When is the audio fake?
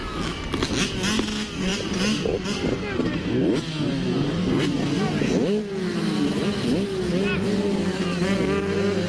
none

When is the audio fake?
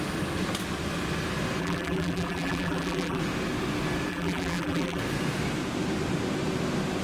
1.6-3.2 (vocoder, BigVGAN v2); 4.1-5.0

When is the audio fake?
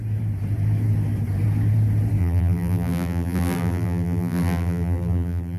2.2-5.6 (vocoder, BigVGAN v2)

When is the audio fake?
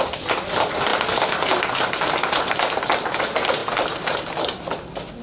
none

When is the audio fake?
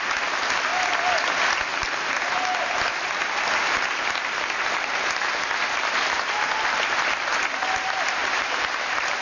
8.2-9.2 (vocoder, BigVGAN v2)